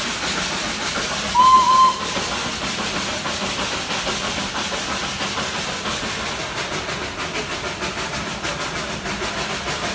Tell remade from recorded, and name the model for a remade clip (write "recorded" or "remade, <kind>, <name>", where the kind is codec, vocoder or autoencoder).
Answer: recorded